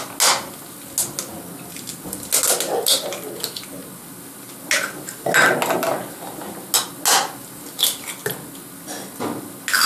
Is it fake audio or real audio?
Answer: real